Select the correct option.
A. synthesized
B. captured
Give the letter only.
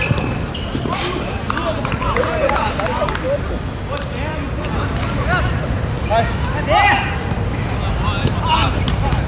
B